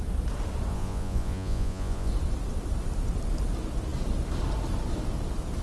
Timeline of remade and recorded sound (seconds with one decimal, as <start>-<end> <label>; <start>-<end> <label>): 0.0-0.7 recorded; 0.7-2.1 remade; 2.1-5.6 recorded